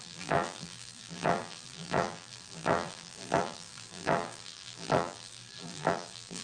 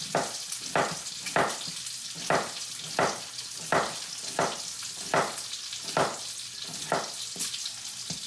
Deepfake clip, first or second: first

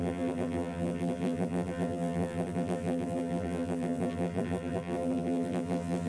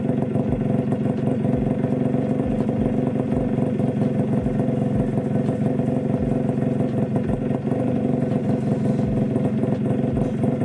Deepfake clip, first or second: first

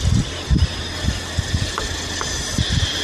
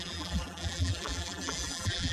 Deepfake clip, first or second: second